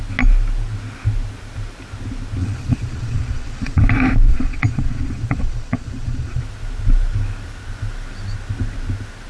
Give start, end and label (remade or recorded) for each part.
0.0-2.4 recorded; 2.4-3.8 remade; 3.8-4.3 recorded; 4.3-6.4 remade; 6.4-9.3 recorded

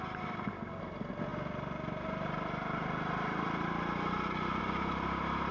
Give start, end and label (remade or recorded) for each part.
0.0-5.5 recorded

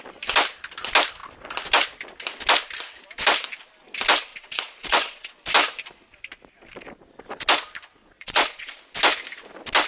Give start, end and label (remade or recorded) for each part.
0.0-4.3 recorded; 4.3-5.3 remade; 5.3-8.0 recorded; 8.0-8.8 remade; 8.8-9.9 recorded

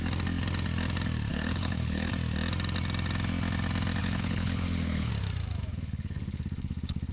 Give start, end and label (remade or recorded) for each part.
0.0-1.3 recorded; 1.3-2.1 remade; 2.1-4.0 recorded; 4.0-5.1 remade; 5.1-5.7 recorded; 5.7-7.1 remade